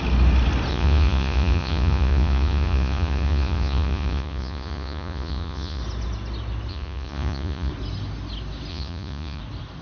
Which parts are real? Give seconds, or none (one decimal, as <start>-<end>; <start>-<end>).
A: 0.0-0.7; 5.8-6.7; 7.7-8.7; 9.4-9.8